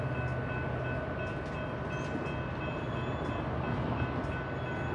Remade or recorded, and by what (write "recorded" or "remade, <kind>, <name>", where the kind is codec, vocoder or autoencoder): recorded